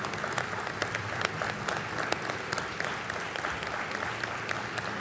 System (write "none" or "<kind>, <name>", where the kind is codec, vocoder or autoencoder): none